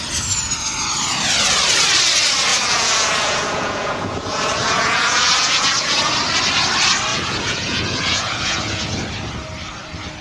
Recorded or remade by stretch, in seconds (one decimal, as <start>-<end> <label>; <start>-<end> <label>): 0.0-2.5 recorded; 2.5-6.1 remade; 6.1-7.1 recorded; 7.1-9.0 remade; 9.0-10.2 recorded